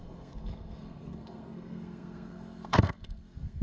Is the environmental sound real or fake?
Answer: fake